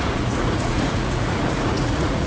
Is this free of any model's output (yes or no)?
no